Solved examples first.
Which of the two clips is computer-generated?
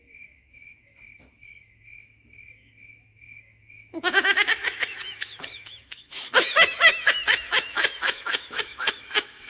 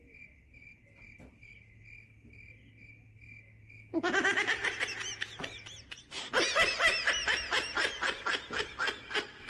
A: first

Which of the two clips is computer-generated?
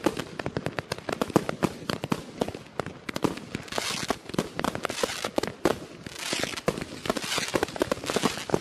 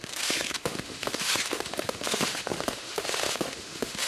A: second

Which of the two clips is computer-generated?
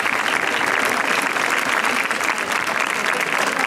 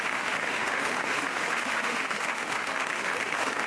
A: second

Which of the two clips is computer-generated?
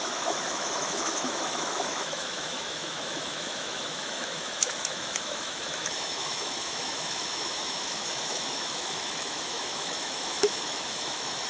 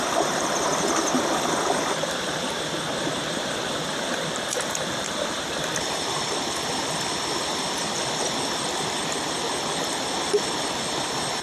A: first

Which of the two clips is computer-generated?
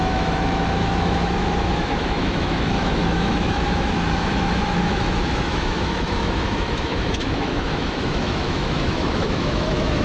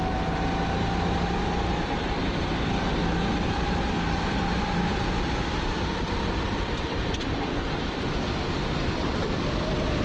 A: first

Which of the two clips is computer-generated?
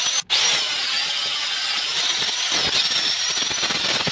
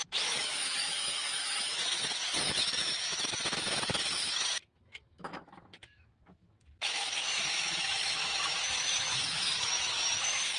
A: second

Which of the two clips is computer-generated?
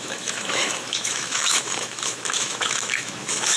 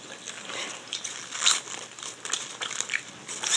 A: first